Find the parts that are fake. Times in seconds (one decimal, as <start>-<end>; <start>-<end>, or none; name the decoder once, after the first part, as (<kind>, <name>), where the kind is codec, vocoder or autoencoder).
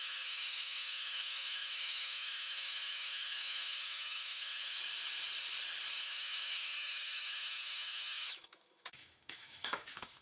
0.0-4.8 (autoencoder, DAC-VAE); 6.0-10.2